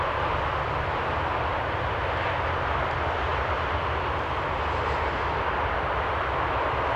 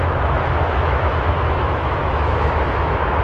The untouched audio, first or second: first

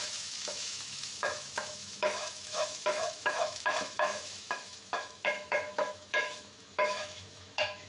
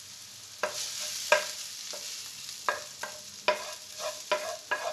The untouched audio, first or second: second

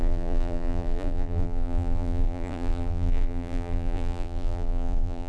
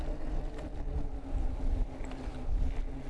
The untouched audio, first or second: second